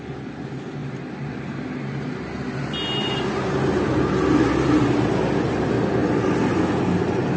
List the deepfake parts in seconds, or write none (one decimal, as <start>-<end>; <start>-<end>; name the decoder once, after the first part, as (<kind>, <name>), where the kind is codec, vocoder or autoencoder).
none